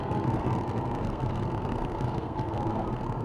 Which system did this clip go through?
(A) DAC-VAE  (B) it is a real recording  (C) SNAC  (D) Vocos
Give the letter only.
C